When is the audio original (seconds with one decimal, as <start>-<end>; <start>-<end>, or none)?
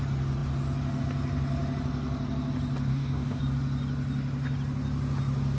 0.0-2.9; 3.4-5.6